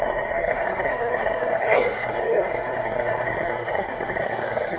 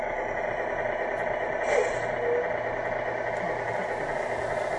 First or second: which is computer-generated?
first